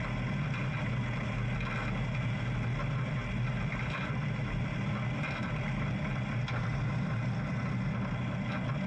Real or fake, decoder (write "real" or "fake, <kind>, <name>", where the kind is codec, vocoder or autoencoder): real